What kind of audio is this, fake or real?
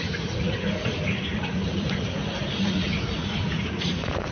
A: fake